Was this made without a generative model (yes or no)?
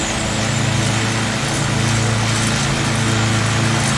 yes